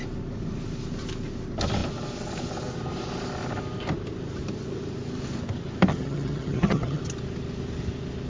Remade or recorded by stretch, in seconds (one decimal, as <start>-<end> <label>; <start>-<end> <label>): 0.0-5.9 recorded; 5.9-7.0 remade; 7.0-8.3 recorded